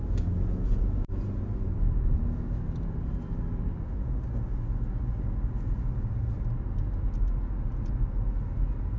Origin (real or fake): real